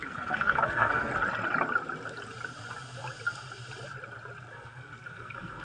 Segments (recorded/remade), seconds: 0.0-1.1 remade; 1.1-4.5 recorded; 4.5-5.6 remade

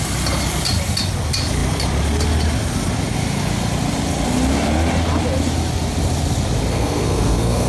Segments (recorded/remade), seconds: 0.0-6.7 recorded; 6.7-7.7 remade